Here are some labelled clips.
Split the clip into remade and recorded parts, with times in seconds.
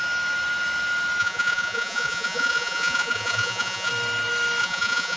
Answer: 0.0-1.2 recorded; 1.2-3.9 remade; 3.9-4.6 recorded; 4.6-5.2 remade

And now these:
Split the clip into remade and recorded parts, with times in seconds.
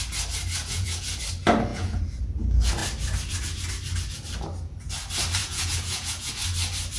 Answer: 0.0-0.6 recorded; 0.6-1.1 remade; 1.1-1.7 recorded; 1.7-2.2 remade; 2.2-5.4 recorded; 5.4-6.3 remade; 6.3-7.0 recorded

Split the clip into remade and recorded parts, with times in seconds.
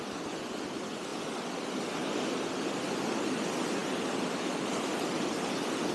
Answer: 0.0-5.9 recorded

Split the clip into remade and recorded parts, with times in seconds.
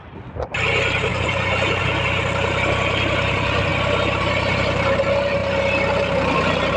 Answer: 0.0-1.1 recorded; 1.1-1.8 remade; 1.8-6.8 recorded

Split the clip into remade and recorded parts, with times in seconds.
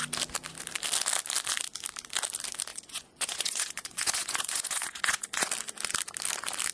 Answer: 0.0-2.7 recorded; 2.7-5.5 remade; 5.5-6.7 recorded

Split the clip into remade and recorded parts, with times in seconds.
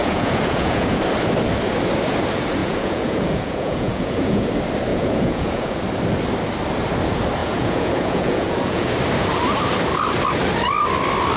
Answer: 0.0-1.0 remade; 1.0-2.6 recorded; 2.6-4.5 remade; 4.5-4.9 recorded; 4.9-5.8 remade; 5.8-7.4 recorded; 7.4-8.9 remade; 8.9-11.4 recorded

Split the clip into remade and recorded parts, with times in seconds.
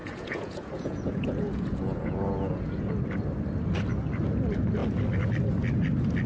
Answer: 0.0-2.9 remade; 2.9-6.3 recorded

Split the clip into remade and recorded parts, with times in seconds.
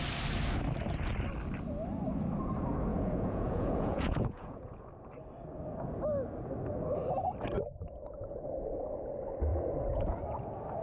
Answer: 0.0-2.9 recorded; 2.9-4.9 remade; 4.9-9.5 recorded; 9.5-10.2 remade; 10.2-10.8 recorded